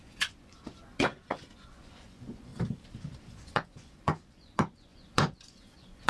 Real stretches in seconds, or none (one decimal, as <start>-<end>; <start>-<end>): 2.5-3.2